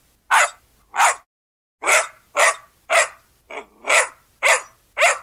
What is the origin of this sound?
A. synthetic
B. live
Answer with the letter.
B